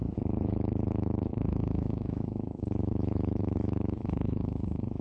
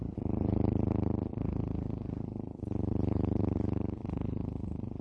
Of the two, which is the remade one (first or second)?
first